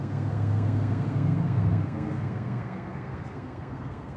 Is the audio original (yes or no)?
no